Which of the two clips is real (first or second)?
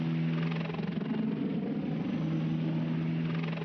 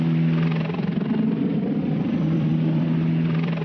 first